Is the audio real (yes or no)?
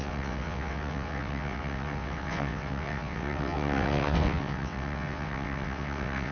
no